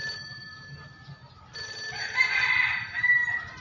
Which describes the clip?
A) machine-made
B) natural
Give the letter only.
A